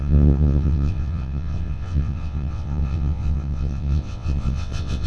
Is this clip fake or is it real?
fake